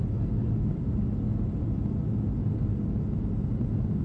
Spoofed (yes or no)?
no